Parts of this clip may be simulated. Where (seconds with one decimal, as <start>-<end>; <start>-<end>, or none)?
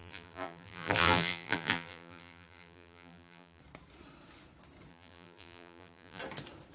0.0-3.6; 4.9-6.2